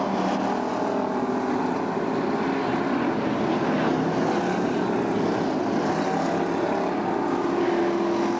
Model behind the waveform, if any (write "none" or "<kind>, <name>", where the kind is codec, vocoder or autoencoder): none